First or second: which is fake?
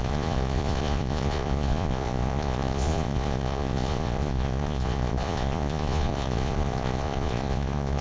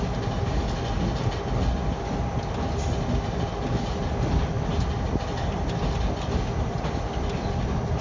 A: first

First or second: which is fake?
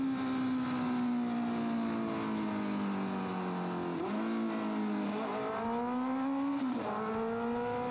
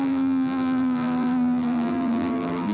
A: second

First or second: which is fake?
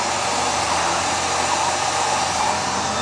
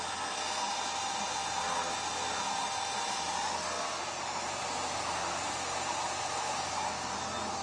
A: first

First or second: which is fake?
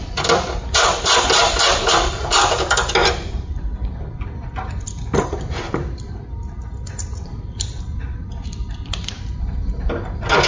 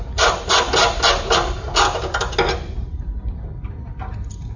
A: first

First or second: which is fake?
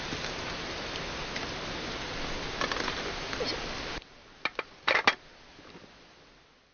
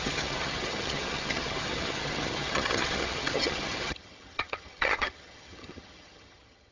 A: second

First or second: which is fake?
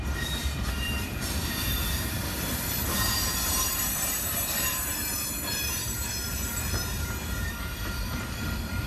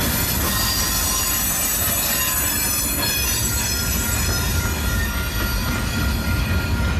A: first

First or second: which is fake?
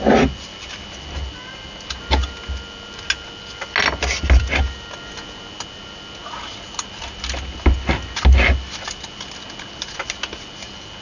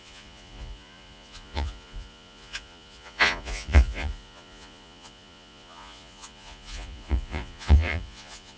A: second